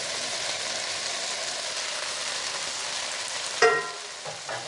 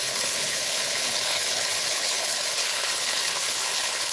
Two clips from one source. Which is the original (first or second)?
first